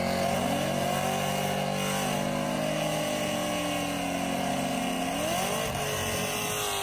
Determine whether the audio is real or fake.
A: real